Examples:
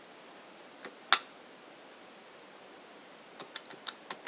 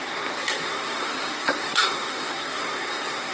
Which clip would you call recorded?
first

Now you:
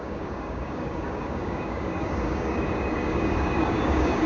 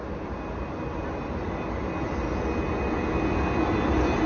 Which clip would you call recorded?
second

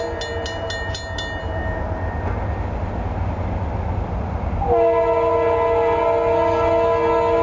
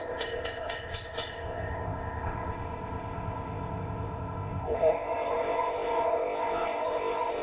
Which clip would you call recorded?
first